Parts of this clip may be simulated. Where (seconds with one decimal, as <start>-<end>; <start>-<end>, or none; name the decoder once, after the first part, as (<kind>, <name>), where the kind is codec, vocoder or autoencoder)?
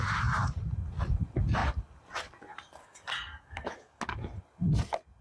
2.8-4.0 (codec, DAC)